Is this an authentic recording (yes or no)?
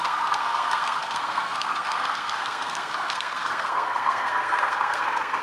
no